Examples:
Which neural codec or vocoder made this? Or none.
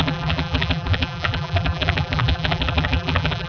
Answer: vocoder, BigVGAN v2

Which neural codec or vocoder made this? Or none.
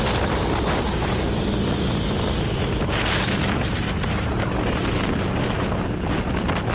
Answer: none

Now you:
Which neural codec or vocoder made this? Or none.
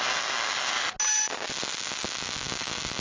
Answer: none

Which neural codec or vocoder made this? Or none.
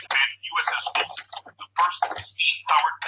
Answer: none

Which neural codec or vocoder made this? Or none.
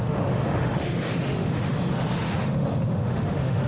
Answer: autoencoder, DAC-VAE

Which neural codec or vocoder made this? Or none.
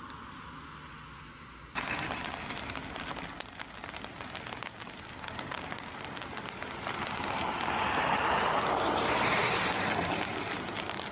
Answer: none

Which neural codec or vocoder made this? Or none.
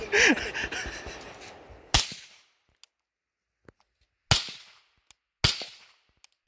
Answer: none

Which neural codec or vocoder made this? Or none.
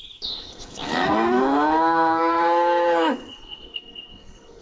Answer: codec, SNAC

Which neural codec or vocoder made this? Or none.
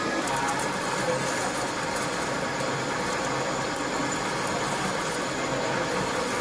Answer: none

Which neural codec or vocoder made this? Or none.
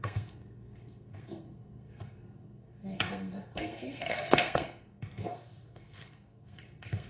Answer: codec, SNAC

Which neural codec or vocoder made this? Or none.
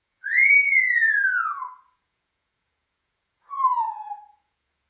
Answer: vocoder, Vocos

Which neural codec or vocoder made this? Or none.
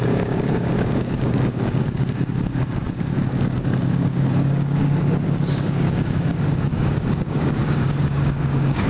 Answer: codec, DAC